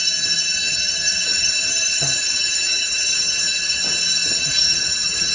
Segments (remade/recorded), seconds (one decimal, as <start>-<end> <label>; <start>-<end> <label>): 0.0-0.6 recorded; 0.6-3.8 remade; 3.8-4.3 recorded; 4.3-5.3 remade